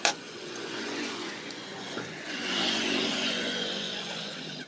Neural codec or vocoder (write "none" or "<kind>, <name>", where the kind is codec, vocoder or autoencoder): vocoder, Vocos